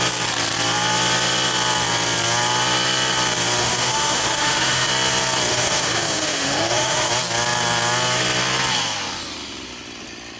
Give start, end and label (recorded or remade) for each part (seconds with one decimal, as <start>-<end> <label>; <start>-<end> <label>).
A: 0.0-3.6 recorded; 3.6-4.9 remade; 4.9-5.5 recorded; 5.5-7.1 remade; 7.1-10.4 recorded